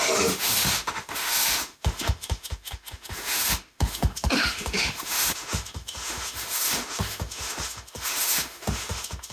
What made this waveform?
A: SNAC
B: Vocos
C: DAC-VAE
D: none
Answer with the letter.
C